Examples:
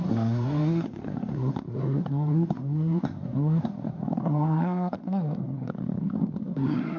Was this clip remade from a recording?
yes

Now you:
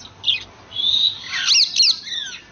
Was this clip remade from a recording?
no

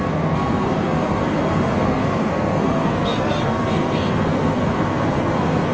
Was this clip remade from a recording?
yes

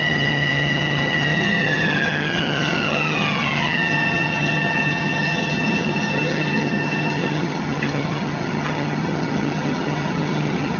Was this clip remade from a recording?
yes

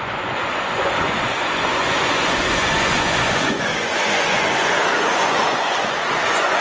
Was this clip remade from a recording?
yes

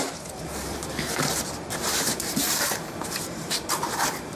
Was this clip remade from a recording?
yes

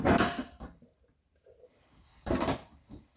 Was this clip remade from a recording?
yes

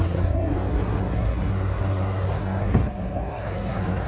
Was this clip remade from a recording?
yes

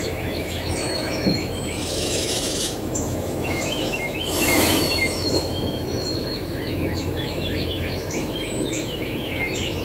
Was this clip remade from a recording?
yes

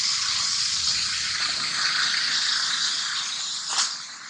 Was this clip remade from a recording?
no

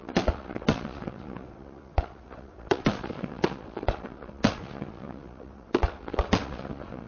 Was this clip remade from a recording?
yes